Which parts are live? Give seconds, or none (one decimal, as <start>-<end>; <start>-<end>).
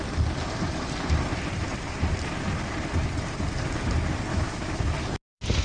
0.0-4.3; 4.8-5.6